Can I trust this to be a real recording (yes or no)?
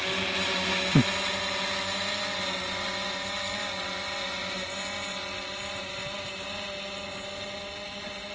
yes